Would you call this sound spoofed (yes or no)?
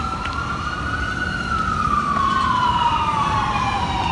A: yes